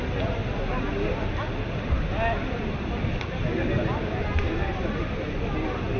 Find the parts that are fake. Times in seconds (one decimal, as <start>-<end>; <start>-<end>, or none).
0.4-1.3; 2.4-3.5